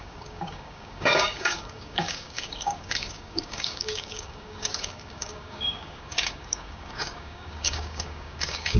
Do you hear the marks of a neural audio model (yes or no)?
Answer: yes